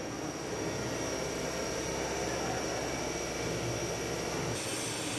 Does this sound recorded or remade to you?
recorded